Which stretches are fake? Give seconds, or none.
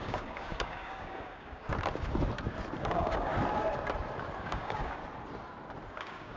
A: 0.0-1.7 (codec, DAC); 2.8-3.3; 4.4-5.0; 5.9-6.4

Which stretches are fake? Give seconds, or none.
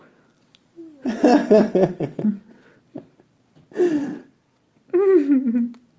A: 1.4-2.8 (vocoder, WaveNeXt); 4.0-4.9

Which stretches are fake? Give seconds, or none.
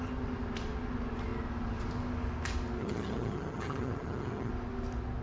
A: 2.8-4.5 (vocoder, HiFi-GAN)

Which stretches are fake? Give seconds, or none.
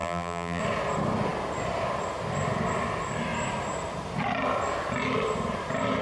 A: 0.0-0.6 (vocoder, BigVGAN v2)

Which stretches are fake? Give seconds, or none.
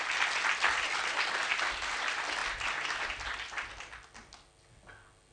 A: none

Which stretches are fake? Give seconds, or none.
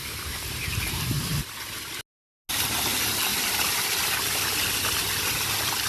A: 3.3-5.9 (vocoder, BigVGAN v2)